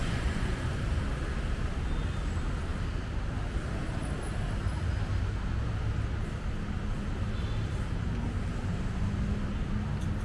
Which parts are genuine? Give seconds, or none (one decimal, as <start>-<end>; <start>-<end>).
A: 0.8-10.2